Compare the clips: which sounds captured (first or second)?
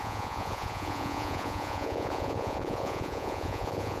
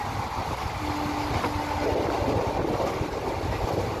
second